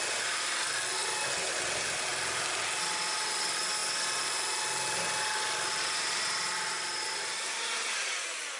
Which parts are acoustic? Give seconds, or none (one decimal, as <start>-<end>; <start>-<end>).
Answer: 0.0-8.6

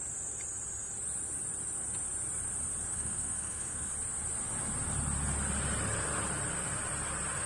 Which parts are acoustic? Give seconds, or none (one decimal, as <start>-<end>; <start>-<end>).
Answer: 0.0-2.9; 3.9-7.5

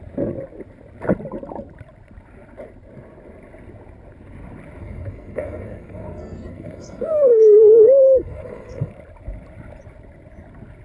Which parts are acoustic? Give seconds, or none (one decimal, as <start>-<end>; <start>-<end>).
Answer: 0.0-4.8; 8.9-10.8

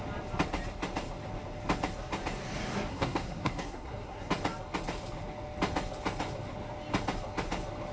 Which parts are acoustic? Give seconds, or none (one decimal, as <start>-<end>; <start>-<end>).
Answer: 0.0-2.9; 4.3-7.9

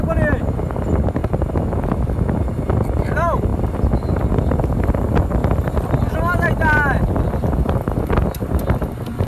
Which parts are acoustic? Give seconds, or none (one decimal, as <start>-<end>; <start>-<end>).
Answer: 0.0-9.3

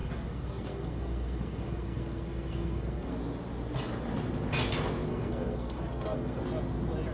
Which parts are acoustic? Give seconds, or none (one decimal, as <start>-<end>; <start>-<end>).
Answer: 3.2-5.1; 6.4-7.1

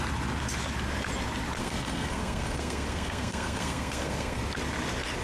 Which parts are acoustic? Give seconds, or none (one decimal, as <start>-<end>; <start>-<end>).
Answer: 0.0-1.6; 4.4-5.2

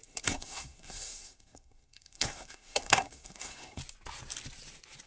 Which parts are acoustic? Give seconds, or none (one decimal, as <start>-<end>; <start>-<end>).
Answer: 3.8-5.1